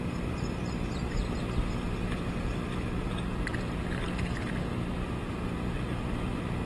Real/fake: real